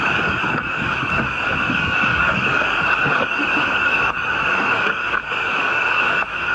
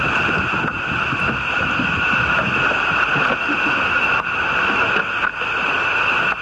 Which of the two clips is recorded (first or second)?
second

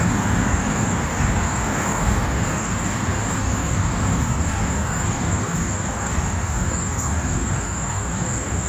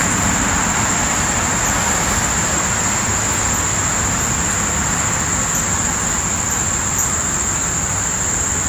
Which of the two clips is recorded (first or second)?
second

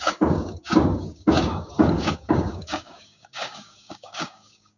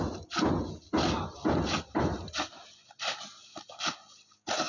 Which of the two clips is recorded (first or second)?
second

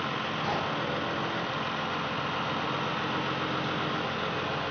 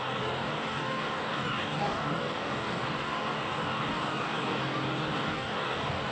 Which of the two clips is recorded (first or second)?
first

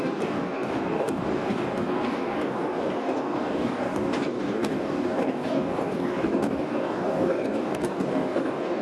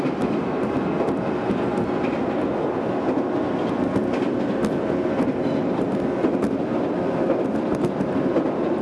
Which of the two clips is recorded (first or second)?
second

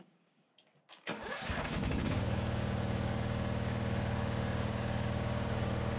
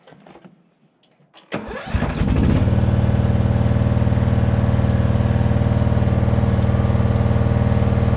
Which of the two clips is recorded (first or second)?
second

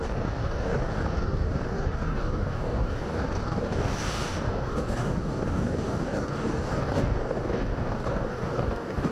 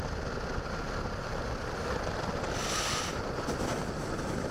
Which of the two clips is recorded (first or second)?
second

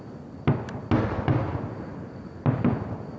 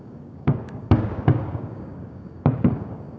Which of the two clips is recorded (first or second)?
first